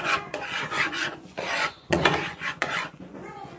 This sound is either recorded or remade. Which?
remade